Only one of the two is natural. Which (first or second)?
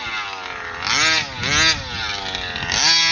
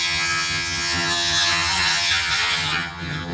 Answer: first